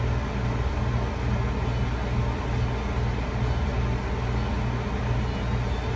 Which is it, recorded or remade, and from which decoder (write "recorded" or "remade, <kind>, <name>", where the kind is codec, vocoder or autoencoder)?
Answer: recorded